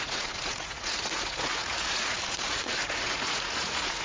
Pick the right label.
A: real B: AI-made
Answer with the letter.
B